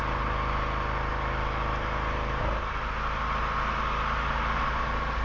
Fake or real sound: real